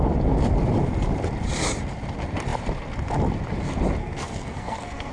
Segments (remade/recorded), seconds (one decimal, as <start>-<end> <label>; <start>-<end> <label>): 0.0-4.0 recorded; 4.0-5.1 remade